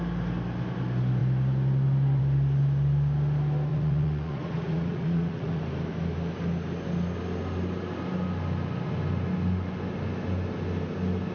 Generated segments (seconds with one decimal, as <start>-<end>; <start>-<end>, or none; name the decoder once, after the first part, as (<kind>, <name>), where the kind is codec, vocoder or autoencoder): 3.7-5.6 (vocoder, Vocos)